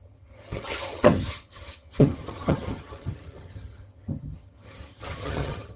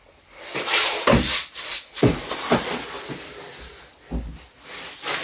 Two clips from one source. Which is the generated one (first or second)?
first